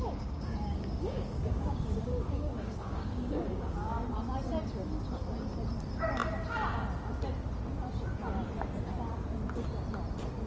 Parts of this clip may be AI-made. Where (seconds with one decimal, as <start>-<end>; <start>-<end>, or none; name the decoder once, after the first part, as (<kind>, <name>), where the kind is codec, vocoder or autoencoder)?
0.0-3.9 (codec, DAC)